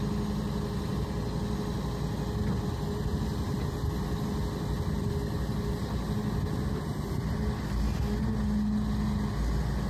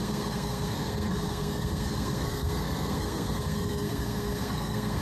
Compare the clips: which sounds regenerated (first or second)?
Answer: second